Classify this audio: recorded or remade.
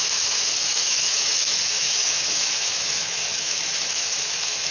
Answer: remade